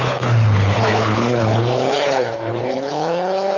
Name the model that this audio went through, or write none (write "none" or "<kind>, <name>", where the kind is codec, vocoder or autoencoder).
codec, HILCodec